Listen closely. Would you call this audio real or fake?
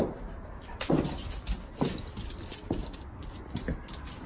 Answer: real